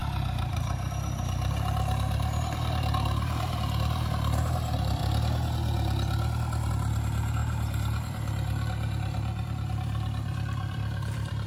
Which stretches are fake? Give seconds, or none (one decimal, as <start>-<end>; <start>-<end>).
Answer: 0.0-5.0; 6.7-11.5